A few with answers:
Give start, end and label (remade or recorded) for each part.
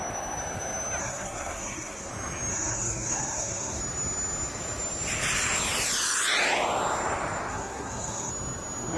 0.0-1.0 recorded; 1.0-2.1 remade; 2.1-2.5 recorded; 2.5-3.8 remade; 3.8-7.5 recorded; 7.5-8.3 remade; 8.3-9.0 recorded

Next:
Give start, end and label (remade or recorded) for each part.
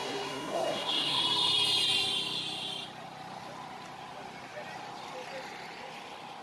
0.0-1.2 remade; 1.2-6.4 recorded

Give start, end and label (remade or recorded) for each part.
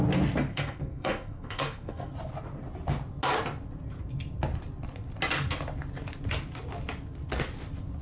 0.0-0.5 recorded; 0.5-2.1 remade; 2.1-8.0 recorded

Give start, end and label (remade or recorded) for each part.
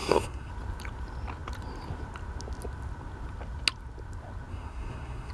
0.0-0.5 remade; 0.5-4.5 recorded; 4.5-5.3 remade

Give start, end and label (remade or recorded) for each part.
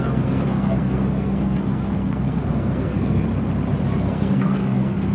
0.0-3.3 remade; 3.3-4.0 recorded; 4.0-5.1 remade